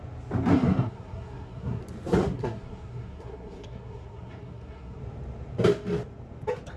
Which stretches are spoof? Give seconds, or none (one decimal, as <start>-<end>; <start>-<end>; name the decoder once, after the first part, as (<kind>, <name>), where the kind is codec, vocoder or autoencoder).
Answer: 0.5-1.8 (codec, SNAC); 2.2-5.0